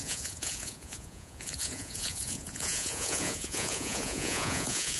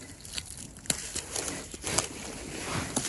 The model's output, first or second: first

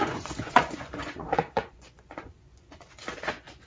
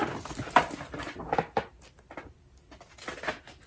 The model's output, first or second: first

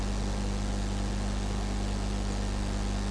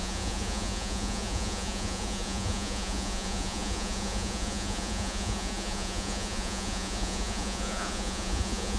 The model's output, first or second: second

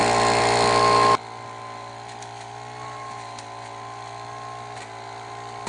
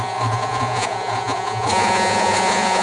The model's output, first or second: second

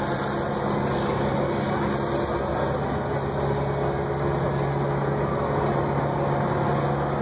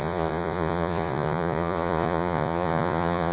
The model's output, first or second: second